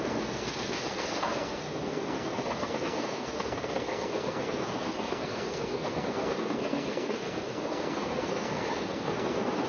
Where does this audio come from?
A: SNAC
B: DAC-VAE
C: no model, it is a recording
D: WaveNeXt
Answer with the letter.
A